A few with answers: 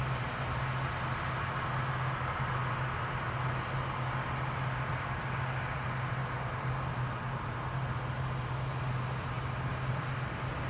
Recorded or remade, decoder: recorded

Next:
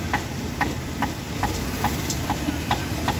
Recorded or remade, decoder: recorded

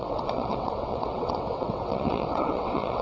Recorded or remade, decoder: remade, vocoder, WaveNeXt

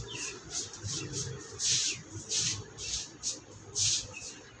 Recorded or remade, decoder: recorded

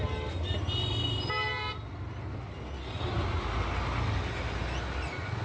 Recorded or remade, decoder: recorded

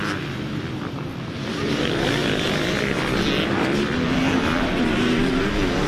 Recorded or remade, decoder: recorded